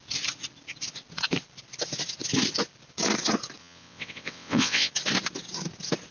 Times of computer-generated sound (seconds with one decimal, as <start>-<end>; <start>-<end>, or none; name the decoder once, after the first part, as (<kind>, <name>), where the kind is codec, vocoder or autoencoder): 3.6-4.9 (vocoder, WaveNeXt)